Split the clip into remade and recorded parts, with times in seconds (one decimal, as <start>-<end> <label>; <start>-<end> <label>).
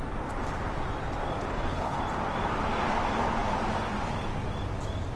0.0-1.5 recorded; 1.5-2.0 remade; 2.0-5.2 recorded